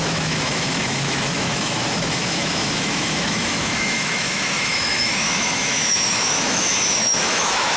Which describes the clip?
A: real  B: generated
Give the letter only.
B